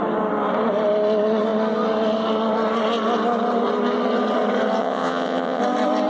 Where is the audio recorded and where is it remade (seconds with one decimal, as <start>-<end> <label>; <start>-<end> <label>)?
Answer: 0.0-4.8 recorded; 4.8-5.6 remade; 5.6-6.1 recorded